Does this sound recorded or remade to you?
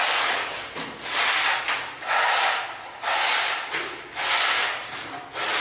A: recorded